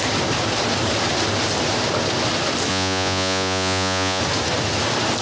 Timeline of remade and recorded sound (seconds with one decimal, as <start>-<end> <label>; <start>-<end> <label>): 0.0-2.7 recorded; 2.7-4.2 remade; 4.2-5.2 recorded